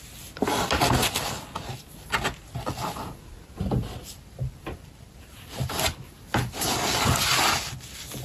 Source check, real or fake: real